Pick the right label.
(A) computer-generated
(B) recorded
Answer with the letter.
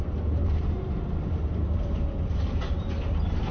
B